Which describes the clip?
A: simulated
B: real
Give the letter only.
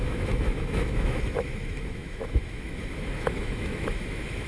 A